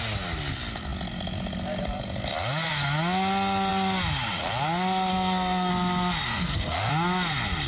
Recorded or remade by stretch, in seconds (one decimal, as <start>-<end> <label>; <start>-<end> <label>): 0.0-5.1 recorded; 5.1-5.7 remade; 5.7-6.3 recorded; 6.3-6.9 remade; 6.9-7.7 recorded